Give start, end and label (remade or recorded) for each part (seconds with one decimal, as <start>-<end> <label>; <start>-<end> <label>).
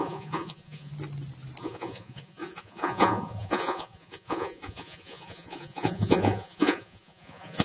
0.0-0.9 remade; 0.9-1.6 recorded; 1.6-7.6 remade